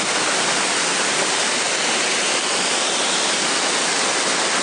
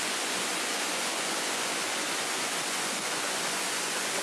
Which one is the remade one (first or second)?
second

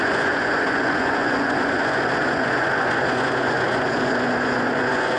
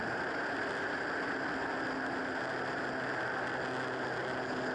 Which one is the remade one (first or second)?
first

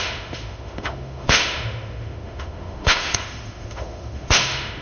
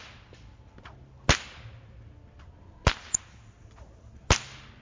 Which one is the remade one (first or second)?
first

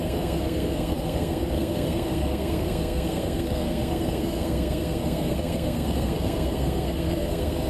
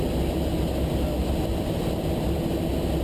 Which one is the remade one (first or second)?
first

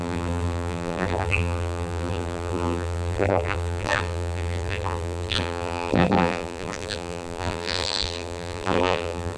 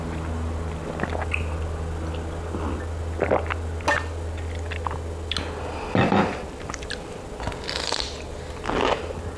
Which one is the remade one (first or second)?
first